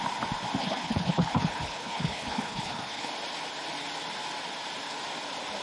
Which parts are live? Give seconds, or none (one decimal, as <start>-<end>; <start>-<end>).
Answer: 0.0-0.6; 3.1-5.6